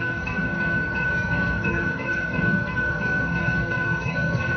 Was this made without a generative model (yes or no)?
no